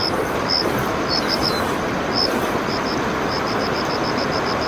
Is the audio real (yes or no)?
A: yes